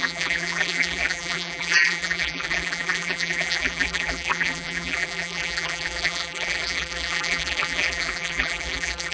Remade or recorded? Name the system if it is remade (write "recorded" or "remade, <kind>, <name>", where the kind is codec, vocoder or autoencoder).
remade, vocoder, BigVGAN v2